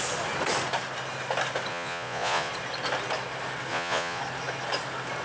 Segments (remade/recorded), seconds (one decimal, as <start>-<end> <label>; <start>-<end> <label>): 0.0-1.7 recorded; 1.7-2.5 remade; 2.5-3.7 recorded; 3.7-4.2 remade; 4.2-5.2 recorded